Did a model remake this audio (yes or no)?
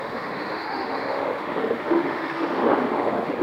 yes